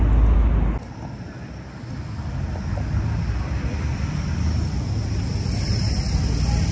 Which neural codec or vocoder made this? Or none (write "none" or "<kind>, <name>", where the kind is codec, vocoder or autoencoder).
none